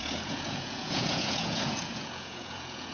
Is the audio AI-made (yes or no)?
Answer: yes